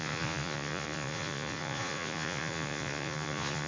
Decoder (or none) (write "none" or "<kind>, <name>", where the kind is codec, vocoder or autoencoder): vocoder, Vocos